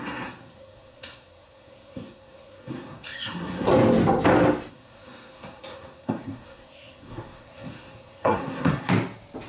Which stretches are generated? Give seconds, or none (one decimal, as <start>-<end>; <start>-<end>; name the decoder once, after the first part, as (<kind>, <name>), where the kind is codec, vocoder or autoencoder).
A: 0.0-3.7 (codec, SNAC); 4.7-8.9

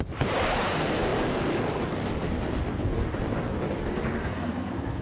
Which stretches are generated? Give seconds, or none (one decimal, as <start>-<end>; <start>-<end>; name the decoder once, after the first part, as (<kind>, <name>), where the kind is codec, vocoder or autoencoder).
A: 4.2-5.0 (codec, SNAC)